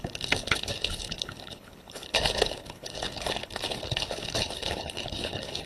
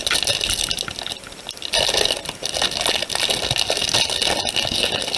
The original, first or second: second